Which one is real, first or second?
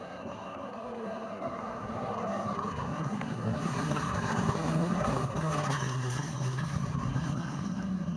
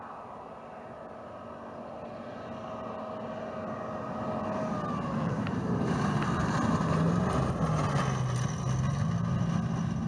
second